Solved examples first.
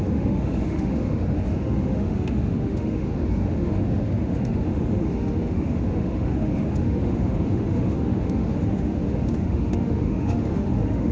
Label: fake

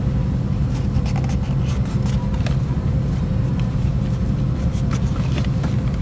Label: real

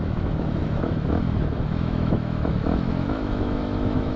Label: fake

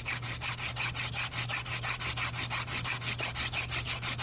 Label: real